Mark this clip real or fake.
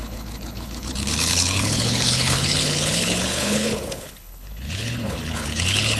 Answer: fake